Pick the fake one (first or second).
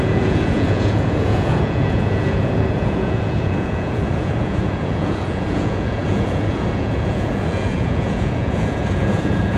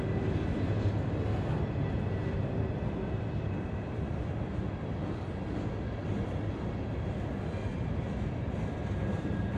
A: first